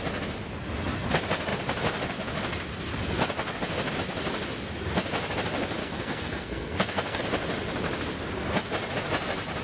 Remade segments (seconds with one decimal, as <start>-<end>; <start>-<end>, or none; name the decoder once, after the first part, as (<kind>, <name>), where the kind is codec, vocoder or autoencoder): 5.8-7.2 (codec, SNAC)

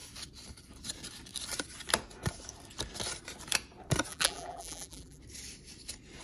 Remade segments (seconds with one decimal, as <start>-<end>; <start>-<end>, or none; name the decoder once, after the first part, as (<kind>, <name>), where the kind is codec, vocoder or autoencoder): 4.1-5.2 (vocoder, BigVGAN v2)

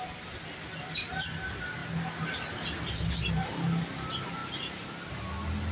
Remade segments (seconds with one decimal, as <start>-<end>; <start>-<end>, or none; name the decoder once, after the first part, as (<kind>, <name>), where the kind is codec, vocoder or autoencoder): none

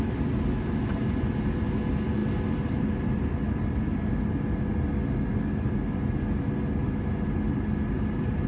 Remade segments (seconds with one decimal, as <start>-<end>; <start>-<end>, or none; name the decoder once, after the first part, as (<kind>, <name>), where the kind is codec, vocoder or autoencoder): none

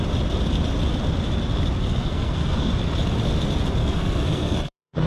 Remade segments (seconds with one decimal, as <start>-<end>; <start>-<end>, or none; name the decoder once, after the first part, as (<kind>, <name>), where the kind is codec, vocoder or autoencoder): 1.8-2.7 (codec, SNAC); 3.8-5.1